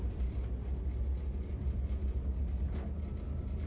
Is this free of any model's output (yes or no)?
yes